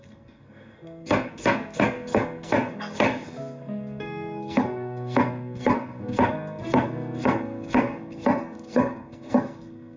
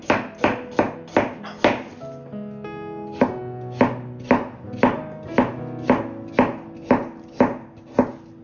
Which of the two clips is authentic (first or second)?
second